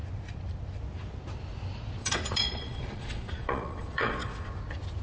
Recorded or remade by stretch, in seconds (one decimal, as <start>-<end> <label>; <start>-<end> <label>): 0.0-2.0 recorded; 2.0-4.5 remade; 4.5-5.0 recorded